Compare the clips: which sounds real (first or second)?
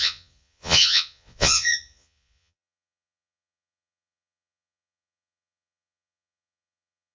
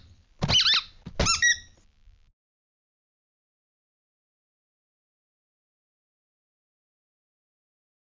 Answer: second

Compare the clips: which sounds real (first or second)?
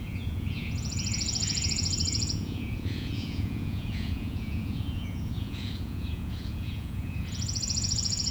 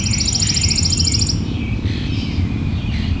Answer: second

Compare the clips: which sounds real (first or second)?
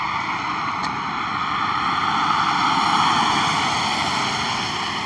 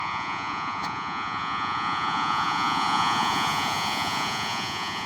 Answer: first